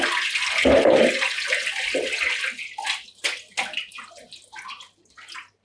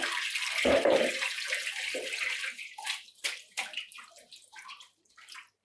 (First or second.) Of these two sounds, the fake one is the second